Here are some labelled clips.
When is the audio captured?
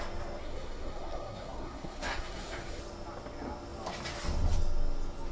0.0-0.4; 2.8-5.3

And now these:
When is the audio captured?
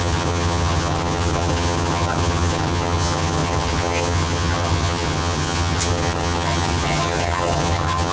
none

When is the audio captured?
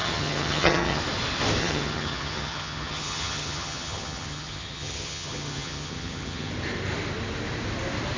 1.0-1.6; 6.5-8.2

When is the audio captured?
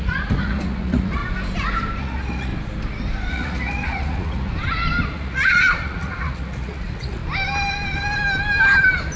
1.2-2.0; 2.5-3.3; 4.5-5.1; 7.2-9.2